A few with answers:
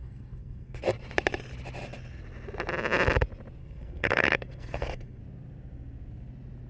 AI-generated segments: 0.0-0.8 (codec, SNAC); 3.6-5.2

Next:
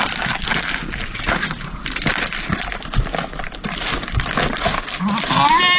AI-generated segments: none

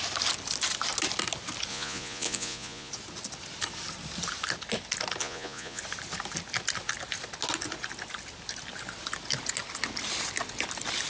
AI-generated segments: 1.7-2.9 (vocoder, Vocos); 5.2-5.8

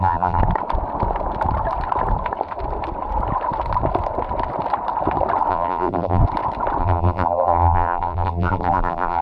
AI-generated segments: 0.0-0.4 (vocoder, BigVGAN v2); 5.5-6.2; 6.8-9.2

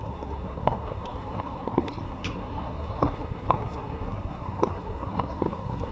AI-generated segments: 0.0-5.9 (codec, SNAC)